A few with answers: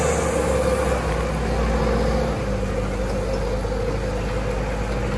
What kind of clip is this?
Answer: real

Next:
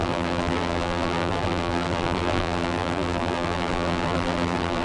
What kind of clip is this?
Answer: fake